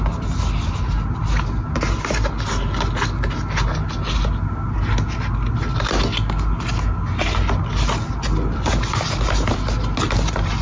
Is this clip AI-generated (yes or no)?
no